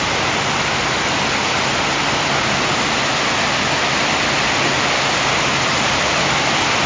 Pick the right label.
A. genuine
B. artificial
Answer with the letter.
A